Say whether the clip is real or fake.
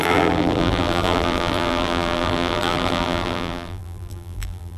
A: fake